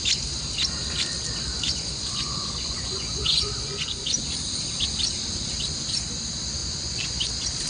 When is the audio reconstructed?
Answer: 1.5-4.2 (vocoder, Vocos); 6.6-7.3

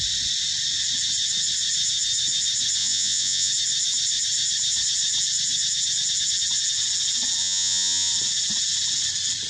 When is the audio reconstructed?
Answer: 2.8-3.5 (vocoder, Vocos); 7.4-8.1

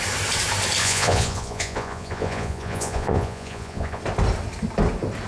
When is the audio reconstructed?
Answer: 0.8-4.0 (vocoder, Vocos)